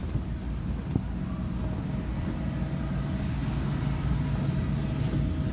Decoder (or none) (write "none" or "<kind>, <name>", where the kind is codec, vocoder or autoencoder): none